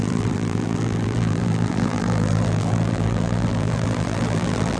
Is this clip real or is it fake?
fake